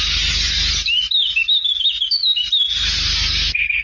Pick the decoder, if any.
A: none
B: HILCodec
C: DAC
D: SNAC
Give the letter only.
A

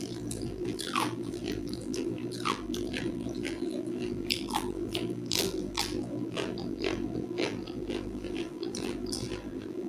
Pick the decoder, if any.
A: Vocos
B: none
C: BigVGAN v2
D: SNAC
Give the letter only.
C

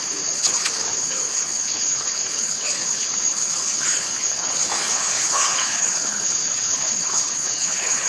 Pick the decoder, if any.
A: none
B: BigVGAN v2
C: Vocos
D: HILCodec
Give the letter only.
D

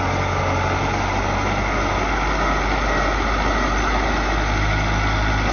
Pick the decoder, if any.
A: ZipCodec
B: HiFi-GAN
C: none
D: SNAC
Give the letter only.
C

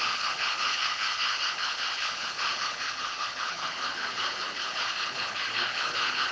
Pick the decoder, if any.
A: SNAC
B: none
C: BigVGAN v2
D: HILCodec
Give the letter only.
D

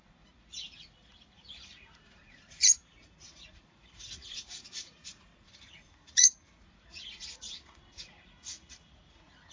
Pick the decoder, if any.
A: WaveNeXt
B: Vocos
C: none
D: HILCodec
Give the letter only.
B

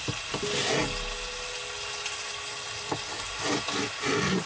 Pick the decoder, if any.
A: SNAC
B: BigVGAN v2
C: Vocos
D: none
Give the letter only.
D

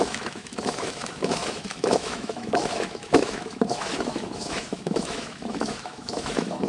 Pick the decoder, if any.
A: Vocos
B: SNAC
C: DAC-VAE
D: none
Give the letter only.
C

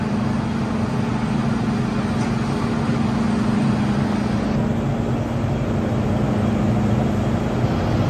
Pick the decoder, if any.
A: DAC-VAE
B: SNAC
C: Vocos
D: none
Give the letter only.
D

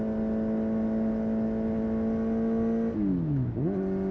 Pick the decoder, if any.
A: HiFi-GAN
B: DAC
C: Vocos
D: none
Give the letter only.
D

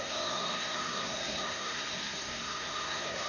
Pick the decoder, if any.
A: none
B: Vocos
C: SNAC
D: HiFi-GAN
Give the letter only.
C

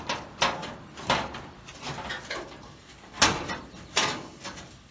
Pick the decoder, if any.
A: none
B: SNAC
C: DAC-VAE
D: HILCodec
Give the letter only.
A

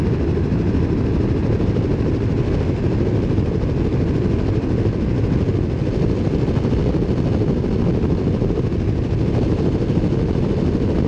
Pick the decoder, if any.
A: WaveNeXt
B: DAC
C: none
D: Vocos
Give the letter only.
C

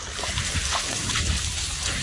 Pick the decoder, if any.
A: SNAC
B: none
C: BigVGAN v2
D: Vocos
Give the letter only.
B